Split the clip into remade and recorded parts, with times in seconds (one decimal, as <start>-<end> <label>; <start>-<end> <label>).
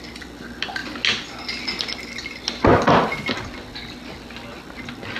0.0-5.2 recorded